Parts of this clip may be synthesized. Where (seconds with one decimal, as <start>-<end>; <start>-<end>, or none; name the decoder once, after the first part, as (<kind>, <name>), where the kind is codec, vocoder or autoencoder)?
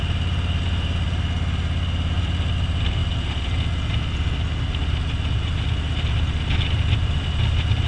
none